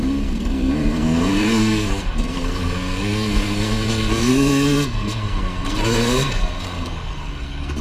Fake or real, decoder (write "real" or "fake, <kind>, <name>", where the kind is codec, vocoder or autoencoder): fake, codec, SNAC